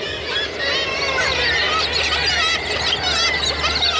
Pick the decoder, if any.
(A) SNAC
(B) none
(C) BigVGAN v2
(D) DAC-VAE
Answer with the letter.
B